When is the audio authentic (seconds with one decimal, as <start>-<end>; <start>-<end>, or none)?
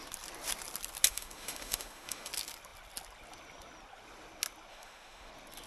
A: 0.0-1.1; 2.3-4.7; 5.3-5.7